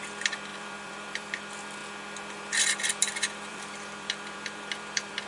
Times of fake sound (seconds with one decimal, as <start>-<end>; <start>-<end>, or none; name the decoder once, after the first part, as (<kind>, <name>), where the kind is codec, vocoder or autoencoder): 0.5-1.3 (vocoder, BigVGAN v2); 3.5-5.3